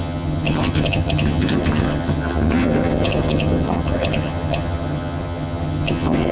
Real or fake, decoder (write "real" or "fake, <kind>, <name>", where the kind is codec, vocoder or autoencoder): fake, vocoder, HiFi-GAN